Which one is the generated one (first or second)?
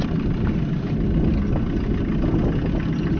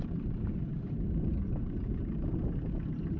second